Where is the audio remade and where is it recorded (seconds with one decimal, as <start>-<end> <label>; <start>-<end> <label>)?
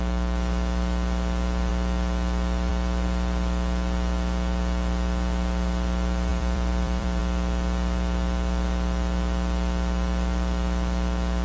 0.0-6.3 recorded; 6.3-7.2 remade; 7.2-11.4 recorded